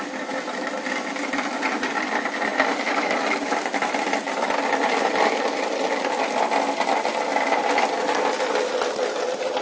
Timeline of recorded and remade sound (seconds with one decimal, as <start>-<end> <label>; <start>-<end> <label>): 0.0-2.5 recorded; 2.5-6.3 remade; 6.3-9.6 recorded